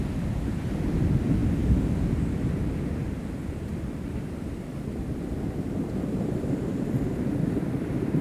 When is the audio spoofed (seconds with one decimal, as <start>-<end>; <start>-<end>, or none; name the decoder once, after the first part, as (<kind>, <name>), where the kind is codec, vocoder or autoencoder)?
0.0-8.2 (vocoder, BigVGAN v2)